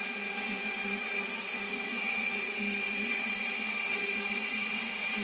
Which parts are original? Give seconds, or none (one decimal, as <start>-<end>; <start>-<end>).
none